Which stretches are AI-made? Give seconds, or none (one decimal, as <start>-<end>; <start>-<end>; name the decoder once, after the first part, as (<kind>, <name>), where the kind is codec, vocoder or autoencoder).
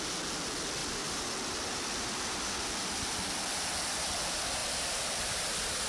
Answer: 0.8-2.7 (vocoder, BigVGAN v2); 4.6-5.5